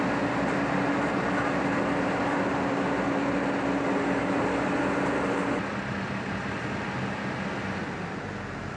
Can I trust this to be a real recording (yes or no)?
yes